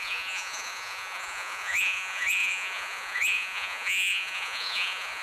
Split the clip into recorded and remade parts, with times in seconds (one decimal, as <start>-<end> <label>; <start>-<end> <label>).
0.0-5.2 remade